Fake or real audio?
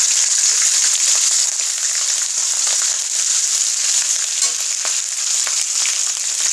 real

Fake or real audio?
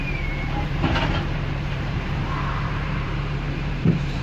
fake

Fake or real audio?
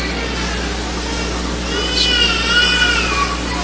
real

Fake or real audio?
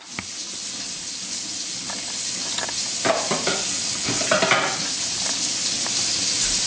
real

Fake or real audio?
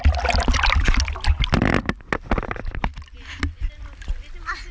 real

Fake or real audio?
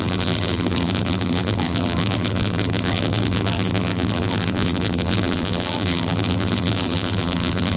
fake